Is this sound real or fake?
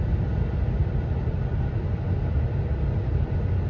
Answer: real